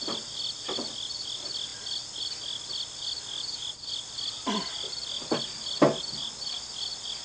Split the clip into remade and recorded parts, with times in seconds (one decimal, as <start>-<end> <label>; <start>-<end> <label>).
0.0-7.2 recorded